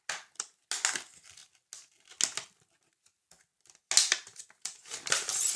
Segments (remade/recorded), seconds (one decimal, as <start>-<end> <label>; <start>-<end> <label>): 0.0-5.6 recorded